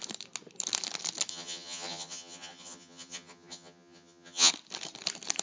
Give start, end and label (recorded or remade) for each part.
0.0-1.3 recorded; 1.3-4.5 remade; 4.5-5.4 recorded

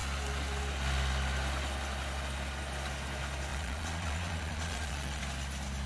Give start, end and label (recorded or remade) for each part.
0.0-3.5 recorded; 3.5-5.2 remade; 5.2-5.9 recorded

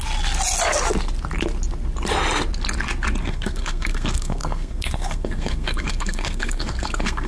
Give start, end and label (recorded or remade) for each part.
0.0-3.2 recorded; 3.2-7.3 remade

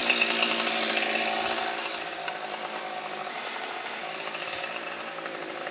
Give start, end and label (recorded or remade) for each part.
0.0-3.3 recorded; 3.3-4.0 remade; 4.0-5.7 recorded

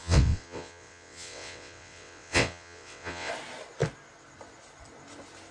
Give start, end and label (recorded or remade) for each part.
0.0-3.3 remade; 3.3-5.5 recorded

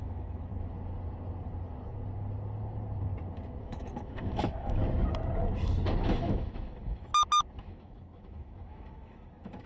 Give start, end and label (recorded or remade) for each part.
0.0-0.5 remade; 0.5-3.6 recorded; 3.6-4.8 remade; 4.8-6.0 recorded; 6.0-7.1 remade; 7.1-7.6 recorded; 7.6-9.7 remade